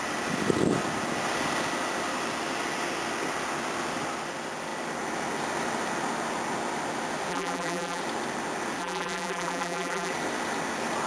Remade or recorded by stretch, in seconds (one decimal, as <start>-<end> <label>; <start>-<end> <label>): 0.0-7.3 recorded; 7.3-8.0 remade; 8.0-8.8 recorded; 8.8-10.1 remade; 10.1-11.1 recorded